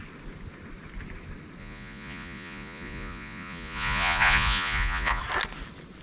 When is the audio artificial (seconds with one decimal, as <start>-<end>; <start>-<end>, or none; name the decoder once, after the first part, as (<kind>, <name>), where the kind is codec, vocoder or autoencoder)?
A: 1.6-5.2 (vocoder, Vocos)